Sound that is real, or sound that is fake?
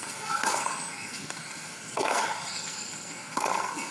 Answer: fake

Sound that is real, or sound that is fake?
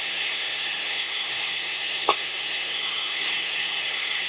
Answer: fake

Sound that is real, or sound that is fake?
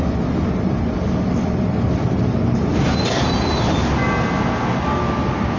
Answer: real